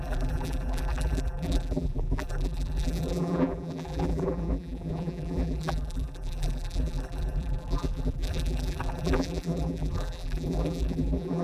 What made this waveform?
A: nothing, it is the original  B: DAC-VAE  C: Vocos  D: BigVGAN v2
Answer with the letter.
D